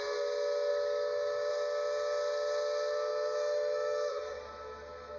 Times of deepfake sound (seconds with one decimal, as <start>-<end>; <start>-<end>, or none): 0.7-1.5; 3.1-5.2